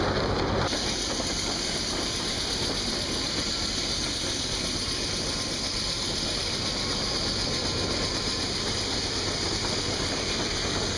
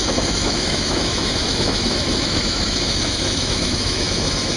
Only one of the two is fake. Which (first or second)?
second